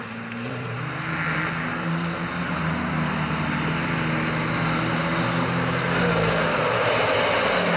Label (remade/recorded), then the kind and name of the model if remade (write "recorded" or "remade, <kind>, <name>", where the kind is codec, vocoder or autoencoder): recorded